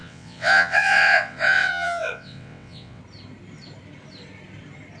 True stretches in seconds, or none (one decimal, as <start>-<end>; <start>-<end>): 3.0-5.0